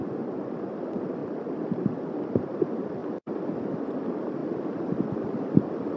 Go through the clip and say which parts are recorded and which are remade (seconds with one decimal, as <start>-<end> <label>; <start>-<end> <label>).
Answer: 0.0-1.2 recorded; 1.2-2.3 remade; 2.3-6.0 recorded